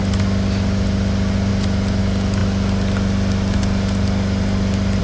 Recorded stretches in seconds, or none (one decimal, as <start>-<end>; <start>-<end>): 0.0-5.0